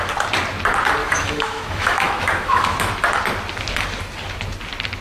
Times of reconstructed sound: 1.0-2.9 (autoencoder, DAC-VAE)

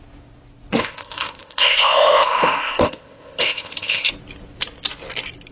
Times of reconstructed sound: 0.8-4.1 (codec, ZipCodec)

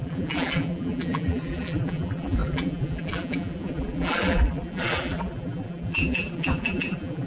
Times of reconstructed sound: 0.0-7.3 (vocoder, BigVGAN v2)